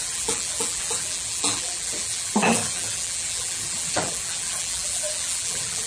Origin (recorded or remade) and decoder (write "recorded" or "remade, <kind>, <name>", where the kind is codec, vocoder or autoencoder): remade, vocoder, BigVGAN v2